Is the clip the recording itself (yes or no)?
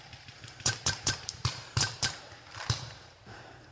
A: no